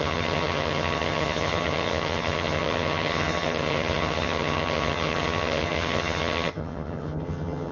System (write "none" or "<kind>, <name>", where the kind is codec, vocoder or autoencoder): vocoder, HiFi-GAN